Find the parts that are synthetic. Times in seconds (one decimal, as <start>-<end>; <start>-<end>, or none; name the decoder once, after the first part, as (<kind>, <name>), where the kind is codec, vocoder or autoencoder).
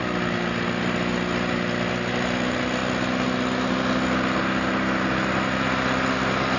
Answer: none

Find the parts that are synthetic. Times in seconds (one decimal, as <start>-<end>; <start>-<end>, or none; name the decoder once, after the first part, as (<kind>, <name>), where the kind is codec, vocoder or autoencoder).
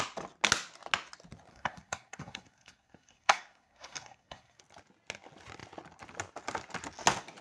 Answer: 1.5-4.6 (codec, SNAC)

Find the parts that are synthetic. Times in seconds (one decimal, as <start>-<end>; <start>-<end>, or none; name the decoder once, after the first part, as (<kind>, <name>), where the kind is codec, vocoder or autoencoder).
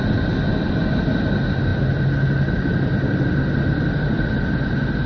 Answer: none